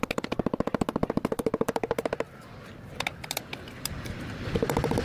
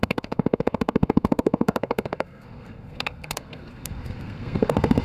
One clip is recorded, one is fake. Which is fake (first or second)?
second